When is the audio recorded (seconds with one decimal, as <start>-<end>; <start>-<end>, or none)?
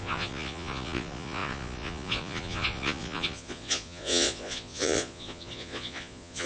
none